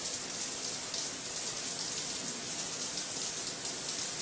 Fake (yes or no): no